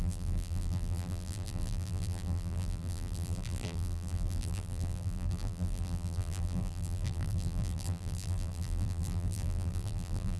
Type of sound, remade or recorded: remade